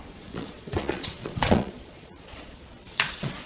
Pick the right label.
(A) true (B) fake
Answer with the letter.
B